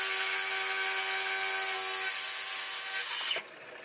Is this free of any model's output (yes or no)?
yes